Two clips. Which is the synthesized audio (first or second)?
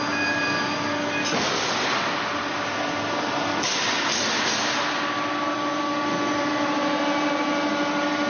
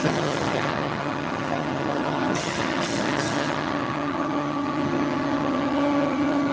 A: second